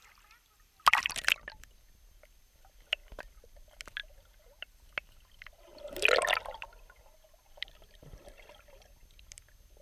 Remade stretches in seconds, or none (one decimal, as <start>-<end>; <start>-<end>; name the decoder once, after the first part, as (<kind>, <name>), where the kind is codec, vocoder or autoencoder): none